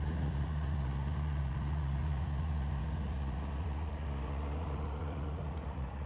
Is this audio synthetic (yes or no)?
yes